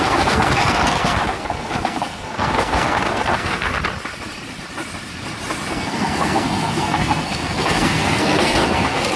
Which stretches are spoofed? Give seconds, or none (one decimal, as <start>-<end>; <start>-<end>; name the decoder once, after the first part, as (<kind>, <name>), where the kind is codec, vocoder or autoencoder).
0.0-3.7 (codec, SNAC); 5.7-9.2